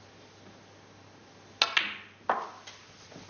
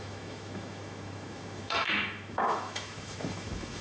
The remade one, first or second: second